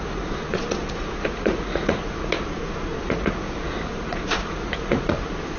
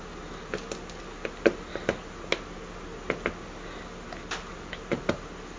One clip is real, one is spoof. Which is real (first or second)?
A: second